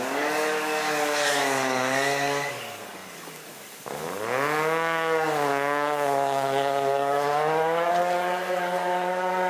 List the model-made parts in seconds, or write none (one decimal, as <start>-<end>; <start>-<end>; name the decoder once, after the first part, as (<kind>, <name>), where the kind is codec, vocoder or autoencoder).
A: 0.0-9.5 (codec, DAC)